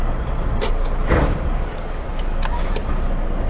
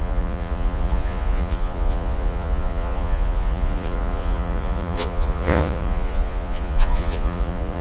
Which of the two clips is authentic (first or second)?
first